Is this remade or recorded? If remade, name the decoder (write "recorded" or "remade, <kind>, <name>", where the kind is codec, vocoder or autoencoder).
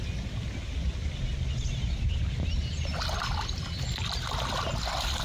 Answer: recorded